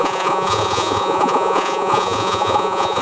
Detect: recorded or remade remade